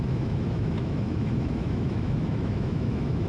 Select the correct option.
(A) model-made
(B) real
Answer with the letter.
A